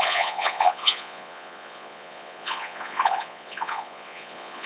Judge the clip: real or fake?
fake